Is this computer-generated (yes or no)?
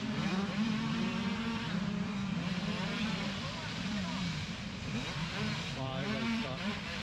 yes